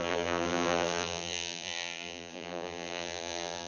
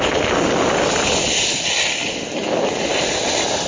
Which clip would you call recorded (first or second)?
second